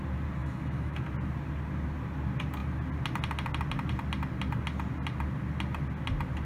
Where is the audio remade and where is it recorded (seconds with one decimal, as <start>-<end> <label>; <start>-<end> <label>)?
0.0-0.4 recorded; 0.4-1.0 remade; 1.0-6.5 recorded